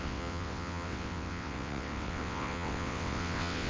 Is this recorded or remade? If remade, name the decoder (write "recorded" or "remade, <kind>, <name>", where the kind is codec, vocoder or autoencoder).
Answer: remade, vocoder, WaveNeXt